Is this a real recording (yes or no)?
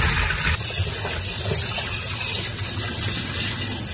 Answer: yes